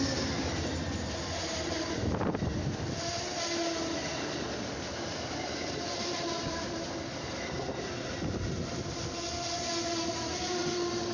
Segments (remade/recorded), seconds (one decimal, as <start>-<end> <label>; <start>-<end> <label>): 0.0-11.1 recorded